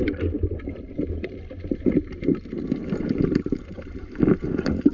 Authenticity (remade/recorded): remade